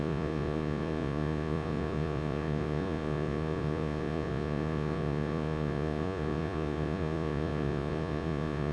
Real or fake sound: fake